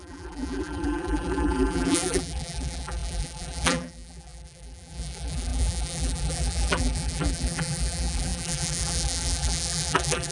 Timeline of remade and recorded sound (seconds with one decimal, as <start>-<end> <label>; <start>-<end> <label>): 0.0-10.3 remade